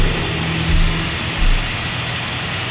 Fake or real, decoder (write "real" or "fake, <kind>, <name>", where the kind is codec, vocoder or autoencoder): real